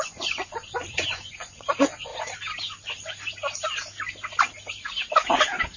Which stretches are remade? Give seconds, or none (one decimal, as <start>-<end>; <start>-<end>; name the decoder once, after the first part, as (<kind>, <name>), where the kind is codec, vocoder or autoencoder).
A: 0.0-2.1 (vocoder, Vocos)